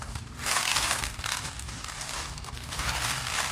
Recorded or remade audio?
remade